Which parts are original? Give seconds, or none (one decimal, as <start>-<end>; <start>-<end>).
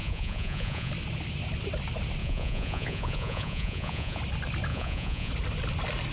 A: 0.9-2.2; 4.2-4.7; 5.3-6.1